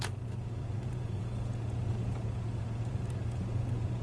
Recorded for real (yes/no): no